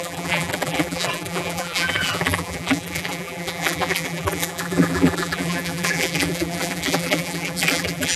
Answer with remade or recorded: remade